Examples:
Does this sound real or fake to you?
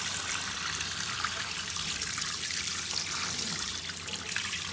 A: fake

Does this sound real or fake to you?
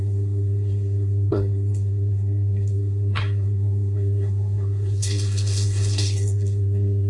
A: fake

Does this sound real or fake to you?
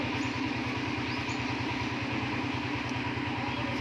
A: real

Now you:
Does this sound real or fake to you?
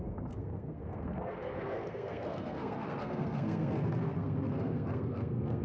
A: fake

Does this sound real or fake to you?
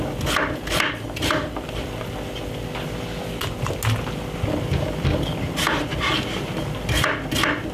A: real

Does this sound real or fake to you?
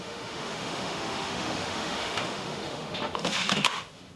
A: fake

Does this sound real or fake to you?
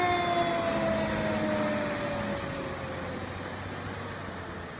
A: real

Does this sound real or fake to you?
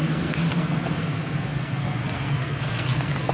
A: fake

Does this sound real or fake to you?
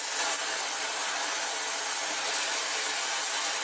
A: real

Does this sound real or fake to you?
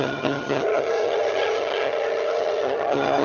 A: fake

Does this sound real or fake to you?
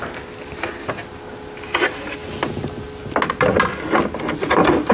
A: real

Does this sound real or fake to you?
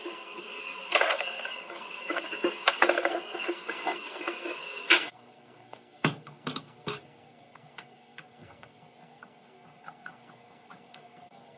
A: fake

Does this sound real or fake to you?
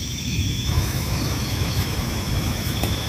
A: fake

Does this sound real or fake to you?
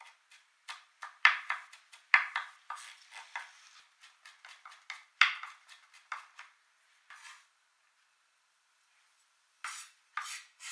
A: real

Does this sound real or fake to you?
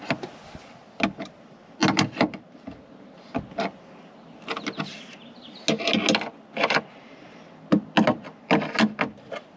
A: real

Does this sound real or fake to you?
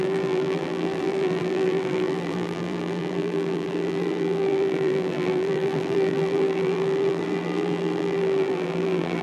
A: fake